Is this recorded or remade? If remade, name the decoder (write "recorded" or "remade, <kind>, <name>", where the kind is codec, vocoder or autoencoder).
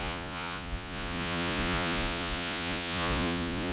remade, vocoder, Vocos